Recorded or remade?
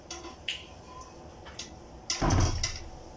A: recorded